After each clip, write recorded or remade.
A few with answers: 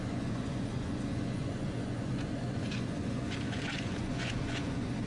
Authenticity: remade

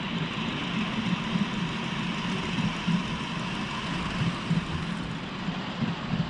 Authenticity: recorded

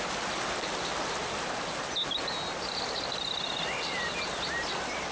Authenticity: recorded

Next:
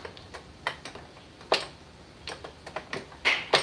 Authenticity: recorded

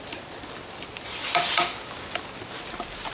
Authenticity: recorded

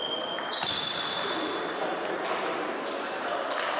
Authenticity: recorded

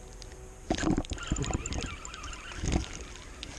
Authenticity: recorded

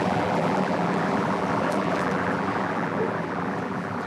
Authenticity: remade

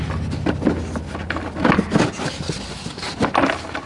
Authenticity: recorded